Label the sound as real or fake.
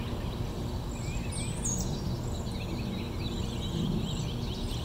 real